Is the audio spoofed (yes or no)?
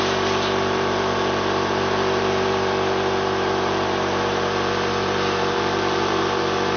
yes